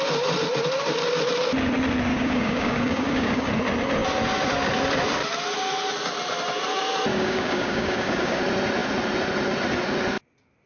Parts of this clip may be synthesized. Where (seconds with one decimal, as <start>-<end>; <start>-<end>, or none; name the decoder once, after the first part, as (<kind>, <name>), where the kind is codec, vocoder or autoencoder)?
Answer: 2.1-3.5 (codec, DAC); 7.1-8.4

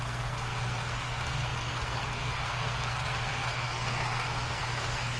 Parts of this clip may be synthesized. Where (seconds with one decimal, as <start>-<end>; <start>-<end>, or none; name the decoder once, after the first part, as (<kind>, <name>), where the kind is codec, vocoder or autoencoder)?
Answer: 0.0-5.2 (codec, SNAC)